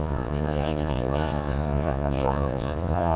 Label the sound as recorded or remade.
remade